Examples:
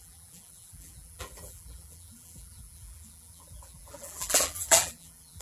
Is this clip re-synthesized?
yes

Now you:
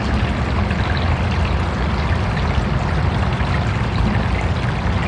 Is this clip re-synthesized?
no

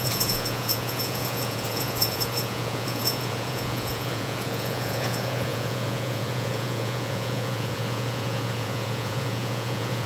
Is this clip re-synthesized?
yes